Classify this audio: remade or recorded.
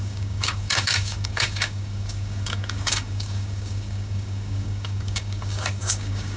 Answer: remade